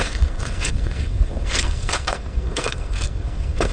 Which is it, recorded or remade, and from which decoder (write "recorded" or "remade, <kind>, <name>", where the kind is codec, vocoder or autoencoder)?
remade, codec, SNAC